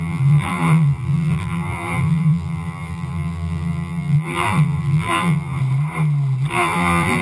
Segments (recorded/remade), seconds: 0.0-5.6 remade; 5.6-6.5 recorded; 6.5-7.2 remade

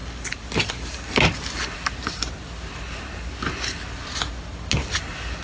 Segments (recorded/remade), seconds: 0.0-5.4 recorded